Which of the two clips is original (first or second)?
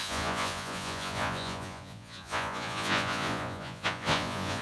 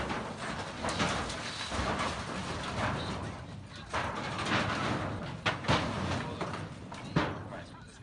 second